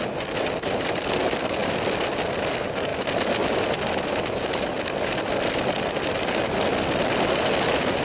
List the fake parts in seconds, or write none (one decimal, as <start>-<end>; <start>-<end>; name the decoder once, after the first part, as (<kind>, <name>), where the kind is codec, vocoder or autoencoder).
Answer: none